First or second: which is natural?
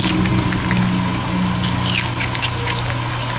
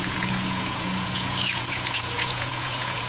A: first